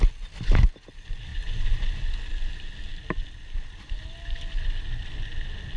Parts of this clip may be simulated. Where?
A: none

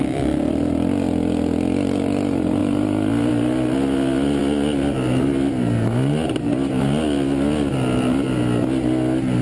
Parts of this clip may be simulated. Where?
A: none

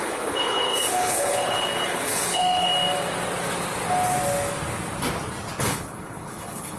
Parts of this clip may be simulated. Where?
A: 0.0-2.7 (codec, HILCodec); 5.6-6.8

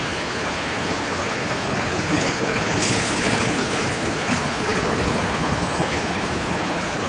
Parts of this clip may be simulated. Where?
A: 0.0-7.1 (codec, HILCodec)

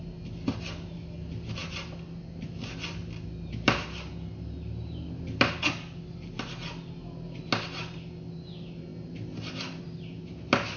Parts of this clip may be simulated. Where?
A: none

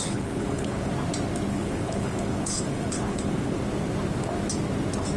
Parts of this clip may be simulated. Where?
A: 0.0-0.9 (codec, HILCodec); 1.5-3.6

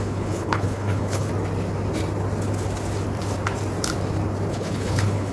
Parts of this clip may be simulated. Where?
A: 0.0-1.3 (codec, HILCodec); 4.5-5.3

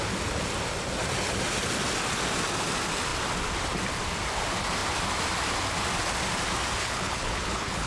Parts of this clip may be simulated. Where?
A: 6.8-7.9 (codec, HILCodec)